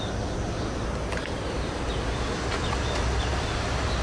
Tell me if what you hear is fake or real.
real